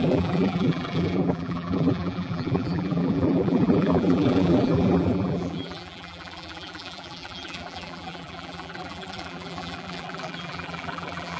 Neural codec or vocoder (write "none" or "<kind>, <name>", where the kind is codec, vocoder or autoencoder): vocoder, BigVGAN v2